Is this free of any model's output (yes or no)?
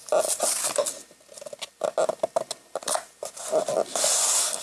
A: yes